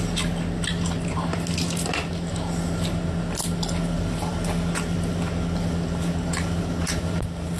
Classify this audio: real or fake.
real